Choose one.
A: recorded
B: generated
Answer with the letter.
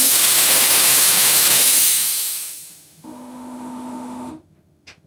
B